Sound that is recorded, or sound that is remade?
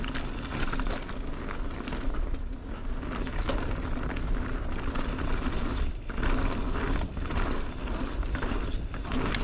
recorded